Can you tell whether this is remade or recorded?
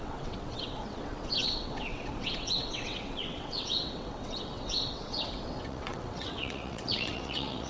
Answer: remade